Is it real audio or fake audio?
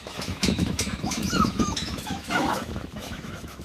fake